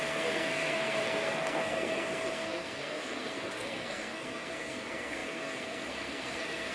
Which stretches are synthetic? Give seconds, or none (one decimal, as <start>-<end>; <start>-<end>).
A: 0.0-6.7